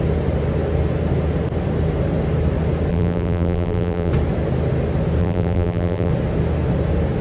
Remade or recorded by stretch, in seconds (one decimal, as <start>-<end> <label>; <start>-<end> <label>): 0.0-2.9 recorded; 2.9-4.1 remade; 4.1-5.2 recorded; 5.2-6.1 remade; 6.1-7.2 recorded